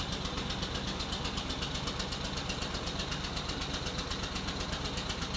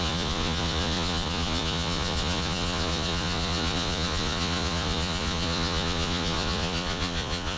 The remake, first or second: second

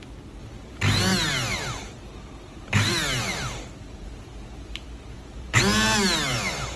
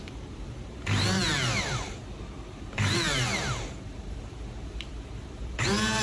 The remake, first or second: second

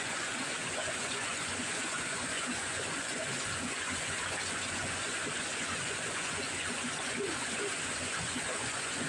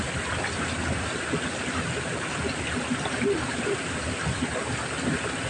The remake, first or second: first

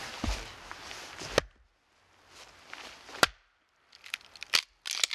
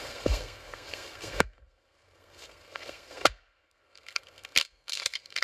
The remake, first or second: second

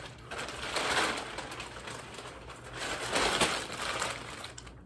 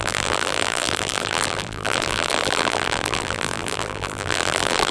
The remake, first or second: second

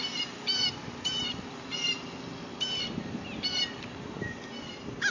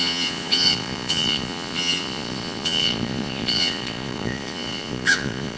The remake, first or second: second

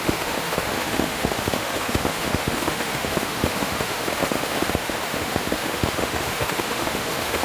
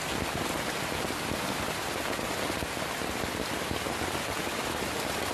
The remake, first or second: first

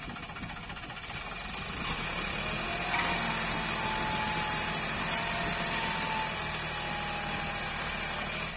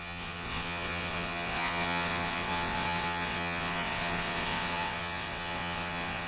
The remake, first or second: second